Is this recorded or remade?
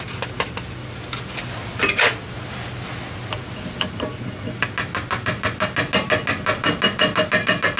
recorded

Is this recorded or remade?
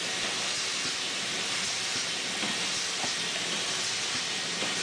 recorded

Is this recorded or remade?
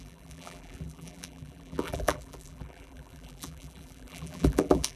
remade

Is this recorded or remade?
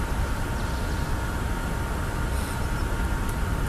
recorded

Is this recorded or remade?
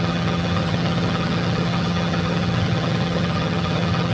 remade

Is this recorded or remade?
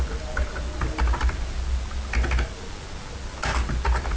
recorded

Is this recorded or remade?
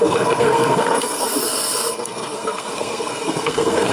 remade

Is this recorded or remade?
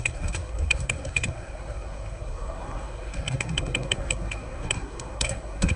remade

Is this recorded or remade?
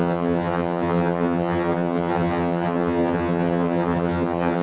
remade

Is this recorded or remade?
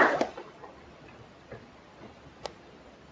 recorded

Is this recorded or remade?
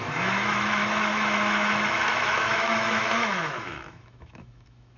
remade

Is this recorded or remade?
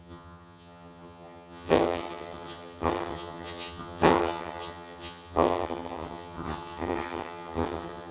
remade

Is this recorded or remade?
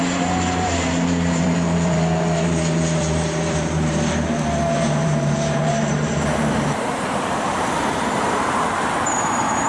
remade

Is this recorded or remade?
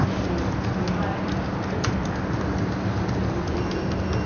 recorded